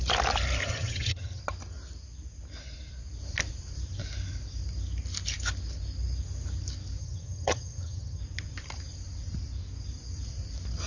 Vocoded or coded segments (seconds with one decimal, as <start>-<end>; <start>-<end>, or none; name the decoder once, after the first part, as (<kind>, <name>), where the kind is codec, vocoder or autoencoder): 0.6-1.4 (vocoder, HiFi-GAN); 7.0-8.2